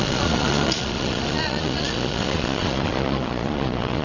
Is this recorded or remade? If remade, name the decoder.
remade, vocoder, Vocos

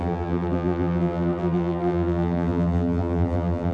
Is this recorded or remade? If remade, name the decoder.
remade, vocoder, BigVGAN v2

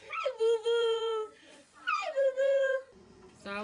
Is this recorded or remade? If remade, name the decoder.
remade, vocoder, Vocos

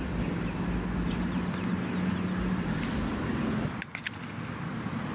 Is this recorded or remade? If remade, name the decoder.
recorded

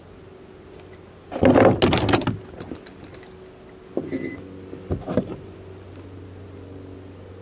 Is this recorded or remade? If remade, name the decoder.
recorded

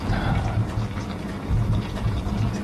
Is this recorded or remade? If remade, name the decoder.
recorded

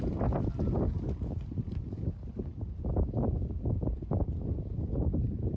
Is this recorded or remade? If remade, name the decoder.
recorded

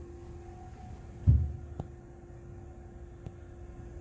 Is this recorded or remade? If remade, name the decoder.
recorded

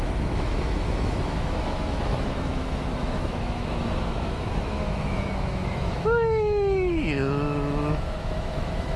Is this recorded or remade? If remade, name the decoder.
remade, autoencoder, DAC-VAE